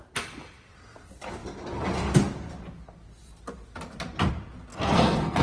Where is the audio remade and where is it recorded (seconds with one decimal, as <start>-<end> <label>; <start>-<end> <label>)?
0.0-4.7 recorded; 4.7-5.4 remade

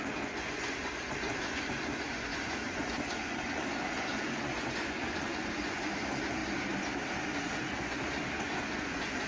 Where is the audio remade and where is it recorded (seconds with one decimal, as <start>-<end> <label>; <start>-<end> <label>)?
0.0-6.4 remade; 6.4-7.4 recorded; 7.4-9.3 remade

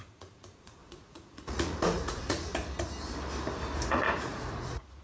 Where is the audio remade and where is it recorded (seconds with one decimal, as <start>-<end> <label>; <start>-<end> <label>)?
0.0-2.5 remade; 2.5-3.9 recorded; 3.9-5.0 remade